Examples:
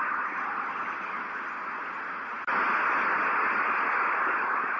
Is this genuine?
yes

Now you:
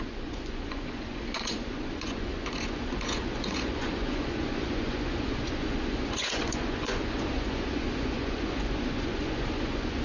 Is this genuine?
no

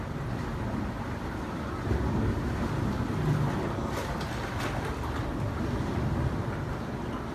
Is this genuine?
yes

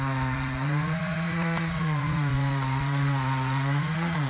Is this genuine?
no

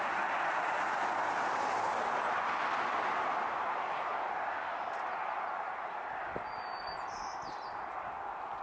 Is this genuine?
yes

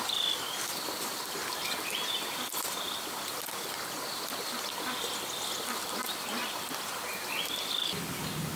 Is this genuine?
yes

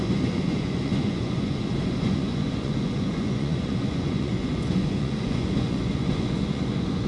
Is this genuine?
no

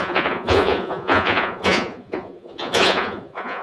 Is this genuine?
no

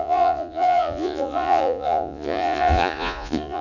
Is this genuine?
no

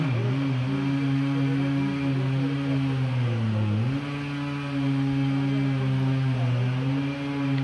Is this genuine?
yes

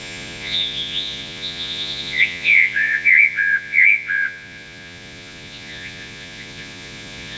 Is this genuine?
no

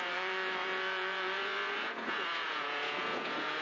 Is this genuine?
no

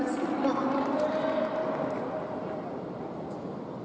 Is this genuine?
yes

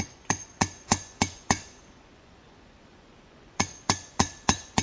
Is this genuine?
no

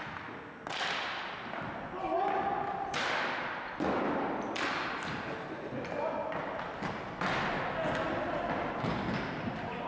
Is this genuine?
yes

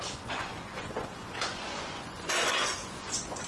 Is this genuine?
no